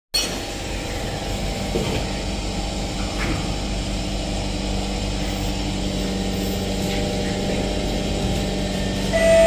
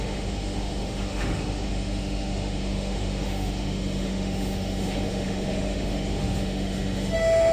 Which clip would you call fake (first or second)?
second